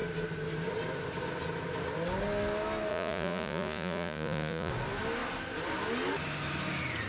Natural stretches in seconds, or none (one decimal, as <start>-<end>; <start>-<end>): 0.0-2.9; 4.7-7.1